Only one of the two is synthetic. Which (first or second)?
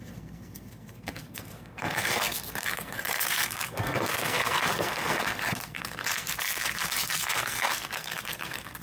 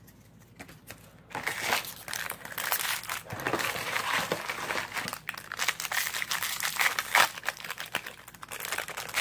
first